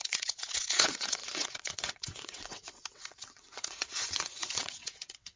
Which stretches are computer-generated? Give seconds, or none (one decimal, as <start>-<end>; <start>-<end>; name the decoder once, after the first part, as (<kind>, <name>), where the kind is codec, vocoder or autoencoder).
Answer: 0.0-5.4 (vocoder, WaveNeXt)